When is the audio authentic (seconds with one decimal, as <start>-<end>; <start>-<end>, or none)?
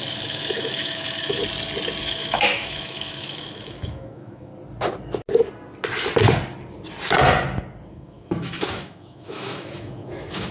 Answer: 1.4-2.0; 4.5-7.9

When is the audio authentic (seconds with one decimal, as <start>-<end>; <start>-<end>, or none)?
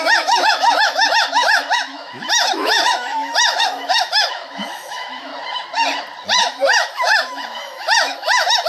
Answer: 5.3-6.4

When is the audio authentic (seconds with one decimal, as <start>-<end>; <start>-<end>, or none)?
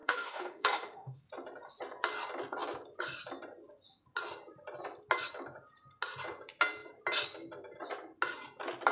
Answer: 1.2-8.9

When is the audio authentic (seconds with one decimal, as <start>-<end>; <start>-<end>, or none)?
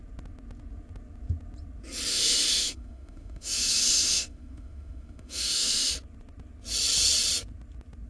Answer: 0.0-2.1; 5.9-8.1